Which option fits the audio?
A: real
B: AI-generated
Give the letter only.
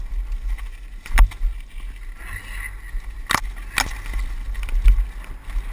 A